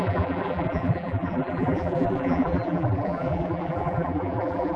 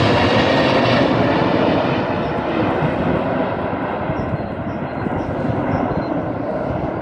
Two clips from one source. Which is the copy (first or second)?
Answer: first